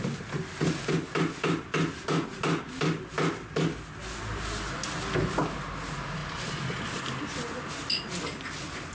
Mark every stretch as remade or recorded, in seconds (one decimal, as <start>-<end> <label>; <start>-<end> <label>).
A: 0.0-8.9 recorded